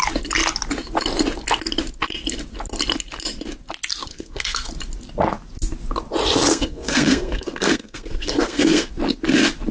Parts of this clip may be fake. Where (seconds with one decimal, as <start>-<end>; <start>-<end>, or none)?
4.1-4.7; 6.5-8.9